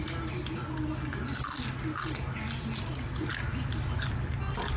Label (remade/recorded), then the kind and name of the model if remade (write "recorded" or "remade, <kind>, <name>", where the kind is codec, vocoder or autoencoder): recorded